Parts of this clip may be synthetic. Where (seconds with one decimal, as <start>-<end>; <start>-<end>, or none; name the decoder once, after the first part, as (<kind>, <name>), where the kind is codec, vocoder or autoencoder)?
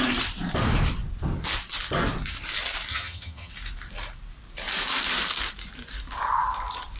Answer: 2.9-3.5 (vocoder, HiFi-GAN)